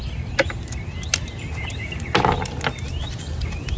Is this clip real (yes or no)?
yes